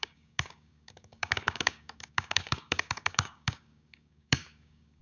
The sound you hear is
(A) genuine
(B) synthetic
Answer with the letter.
B